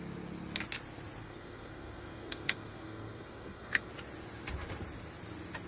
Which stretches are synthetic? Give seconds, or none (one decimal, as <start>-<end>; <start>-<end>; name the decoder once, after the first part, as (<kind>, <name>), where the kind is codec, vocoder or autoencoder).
1.2-3.9 (codec, SNAC)